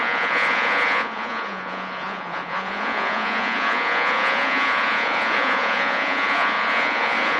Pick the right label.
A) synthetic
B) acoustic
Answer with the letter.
A